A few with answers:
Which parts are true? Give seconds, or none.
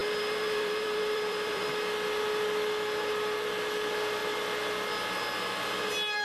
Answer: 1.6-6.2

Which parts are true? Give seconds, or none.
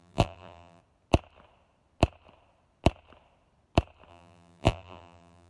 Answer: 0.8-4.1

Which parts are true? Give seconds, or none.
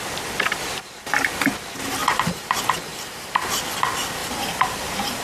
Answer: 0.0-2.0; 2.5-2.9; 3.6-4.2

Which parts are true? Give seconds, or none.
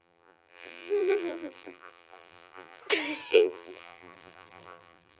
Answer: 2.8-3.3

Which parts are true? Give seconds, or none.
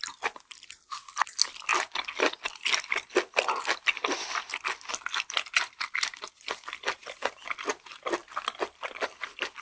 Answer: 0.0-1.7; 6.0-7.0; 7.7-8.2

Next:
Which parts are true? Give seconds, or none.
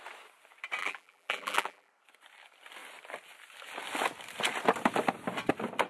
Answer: 0.0-0.8; 1.9-5.9